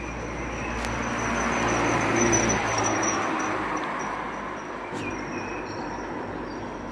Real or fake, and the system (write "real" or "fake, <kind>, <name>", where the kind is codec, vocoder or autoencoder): real